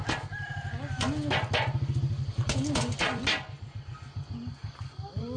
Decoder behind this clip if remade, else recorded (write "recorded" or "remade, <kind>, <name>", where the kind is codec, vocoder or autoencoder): recorded